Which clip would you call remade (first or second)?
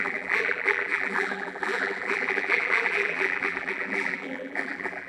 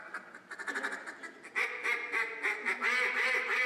first